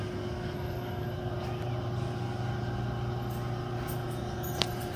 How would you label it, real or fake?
real